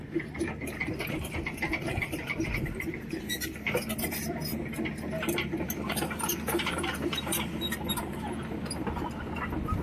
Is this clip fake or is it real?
fake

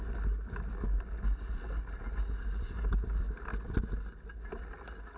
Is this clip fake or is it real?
real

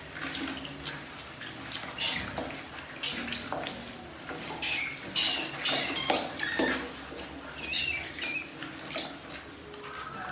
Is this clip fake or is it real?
real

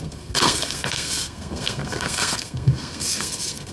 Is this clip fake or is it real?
fake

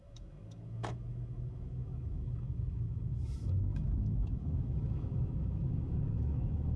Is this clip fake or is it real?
fake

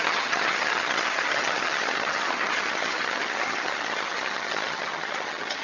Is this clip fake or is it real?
fake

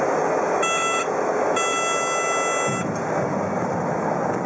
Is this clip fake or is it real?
real